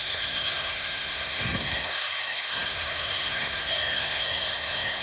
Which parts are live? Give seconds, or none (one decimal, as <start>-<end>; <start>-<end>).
none